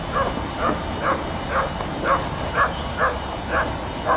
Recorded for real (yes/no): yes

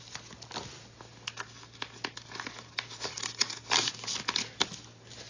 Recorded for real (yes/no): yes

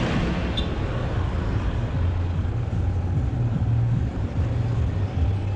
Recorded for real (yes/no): yes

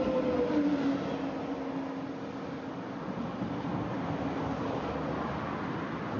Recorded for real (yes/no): yes